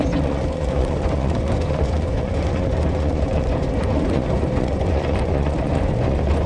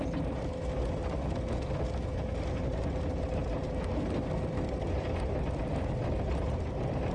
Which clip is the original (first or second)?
second